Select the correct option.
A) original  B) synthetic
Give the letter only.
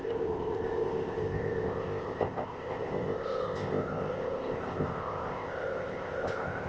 B